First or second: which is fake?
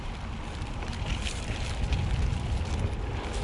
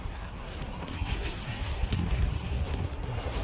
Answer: second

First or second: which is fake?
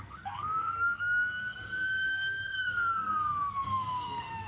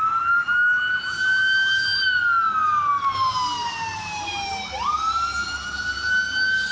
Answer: first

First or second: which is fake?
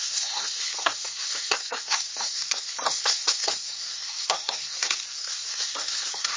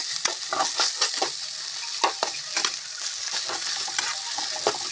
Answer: first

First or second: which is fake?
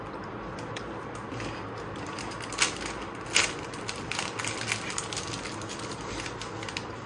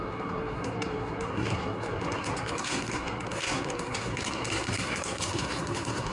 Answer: second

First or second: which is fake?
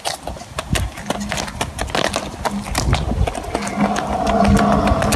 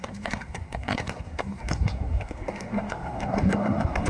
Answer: second